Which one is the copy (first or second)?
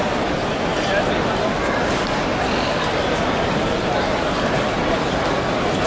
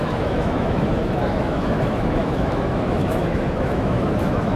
second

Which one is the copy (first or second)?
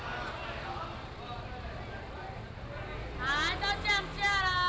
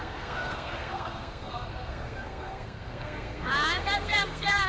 second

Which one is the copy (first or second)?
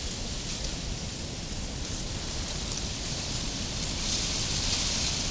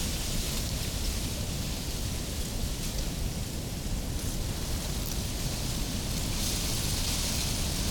first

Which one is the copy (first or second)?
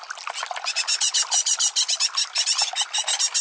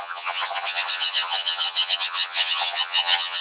second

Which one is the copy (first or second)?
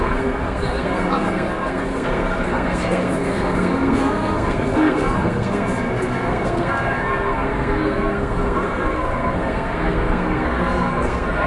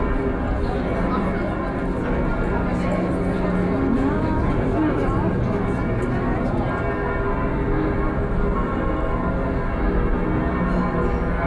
first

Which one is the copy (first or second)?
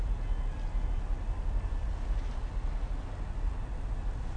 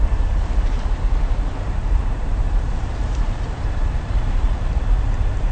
second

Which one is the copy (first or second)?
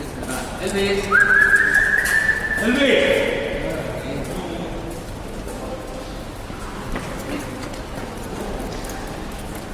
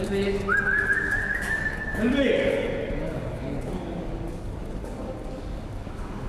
second